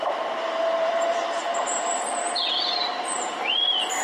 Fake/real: fake